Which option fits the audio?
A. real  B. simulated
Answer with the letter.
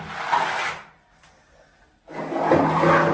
A